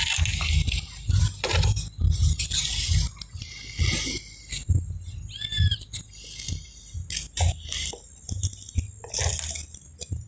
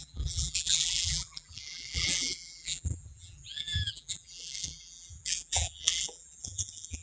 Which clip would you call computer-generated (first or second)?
second